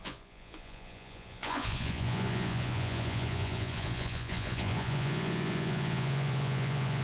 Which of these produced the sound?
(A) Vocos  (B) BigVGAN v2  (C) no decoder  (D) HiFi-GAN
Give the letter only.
A